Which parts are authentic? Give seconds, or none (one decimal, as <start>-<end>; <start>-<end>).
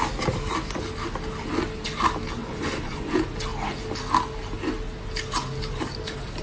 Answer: 0.0-2.4; 3.1-6.4